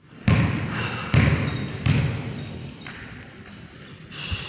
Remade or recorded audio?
recorded